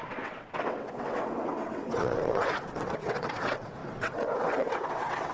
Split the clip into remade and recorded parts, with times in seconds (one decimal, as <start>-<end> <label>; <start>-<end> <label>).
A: 0.0-5.3 remade